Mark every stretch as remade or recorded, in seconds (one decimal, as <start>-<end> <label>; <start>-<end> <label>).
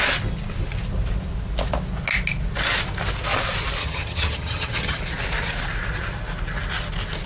0.0-3.8 recorded; 3.8-5.0 remade; 5.0-7.3 recorded